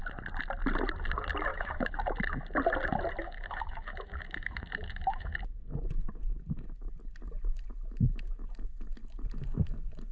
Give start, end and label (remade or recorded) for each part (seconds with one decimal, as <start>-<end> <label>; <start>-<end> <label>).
0.0-1.5 recorded; 1.5-2.2 remade; 2.2-3.2 recorded; 3.2-5.3 remade; 5.3-10.1 recorded

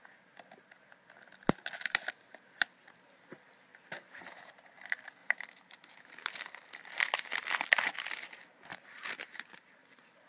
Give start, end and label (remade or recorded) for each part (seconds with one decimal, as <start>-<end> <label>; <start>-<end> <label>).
0.0-3.7 recorded; 3.7-4.5 remade; 4.5-5.2 recorded; 5.2-6.7 remade; 6.7-8.7 recorded; 8.7-10.3 remade

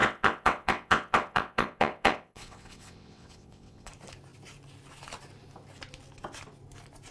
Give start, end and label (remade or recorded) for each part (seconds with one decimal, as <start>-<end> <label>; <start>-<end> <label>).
0.0-3.9 remade; 3.9-7.1 recorded